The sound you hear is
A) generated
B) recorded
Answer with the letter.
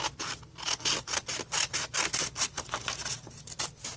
B